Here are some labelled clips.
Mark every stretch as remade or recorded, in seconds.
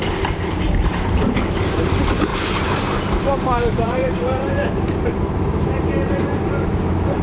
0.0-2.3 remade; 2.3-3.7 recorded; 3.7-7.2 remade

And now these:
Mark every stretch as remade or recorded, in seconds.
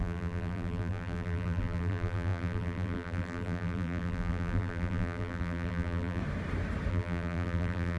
0.0-6.2 remade; 6.2-6.9 recorded; 6.9-8.0 remade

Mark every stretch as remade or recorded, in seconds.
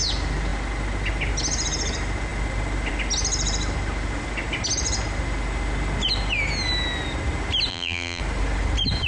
0.0-7.7 recorded; 7.7-8.2 remade; 8.2-9.1 recorded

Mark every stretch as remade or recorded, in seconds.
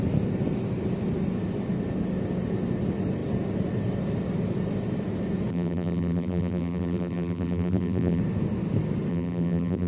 0.0-5.5 recorded; 5.5-8.2 remade; 8.2-9.1 recorded; 9.1-9.9 remade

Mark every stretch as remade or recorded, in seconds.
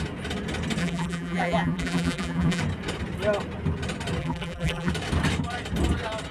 0.0-0.8 recorded; 0.8-2.6 remade; 2.6-4.2 recorded; 4.2-4.9 remade; 4.9-6.3 recorded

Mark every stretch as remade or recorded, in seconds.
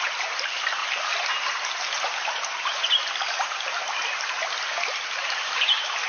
0.0-3.8 remade; 3.8-5.1 recorded; 5.1-6.1 remade